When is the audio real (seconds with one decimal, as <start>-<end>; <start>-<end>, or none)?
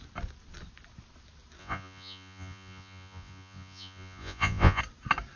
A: 0.0-1.6; 4.8-5.4